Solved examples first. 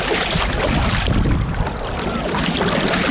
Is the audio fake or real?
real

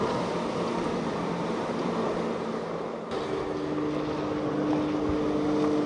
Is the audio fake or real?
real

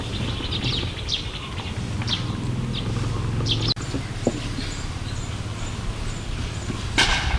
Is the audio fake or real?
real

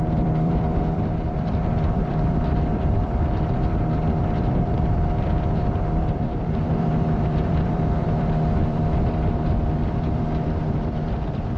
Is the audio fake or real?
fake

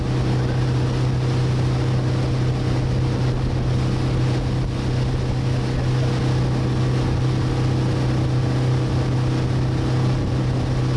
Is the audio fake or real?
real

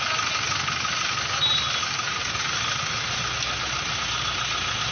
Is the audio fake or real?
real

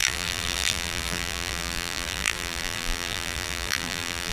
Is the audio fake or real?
fake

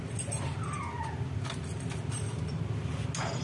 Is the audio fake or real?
real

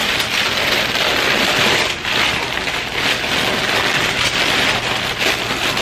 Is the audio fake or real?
real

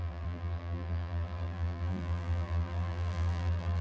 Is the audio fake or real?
fake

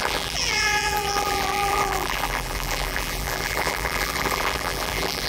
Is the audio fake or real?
fake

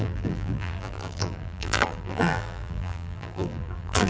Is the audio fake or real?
fake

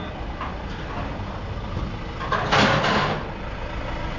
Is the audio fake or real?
real